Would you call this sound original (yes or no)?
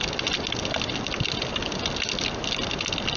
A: yes